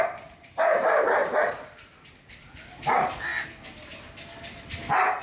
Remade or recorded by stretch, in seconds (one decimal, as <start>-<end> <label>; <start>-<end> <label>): 0.0-3.3 remade; 3.3-5.2 recorded